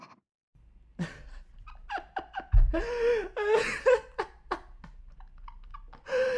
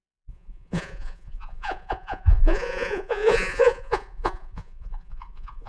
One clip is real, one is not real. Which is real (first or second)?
first